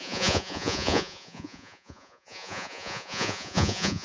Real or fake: fake